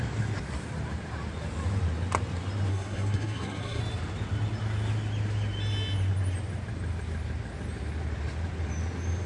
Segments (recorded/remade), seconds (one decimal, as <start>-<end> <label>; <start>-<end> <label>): 0.0-2.7 recorded; 2.7-3.8 remade; 3.8-9.3 recorded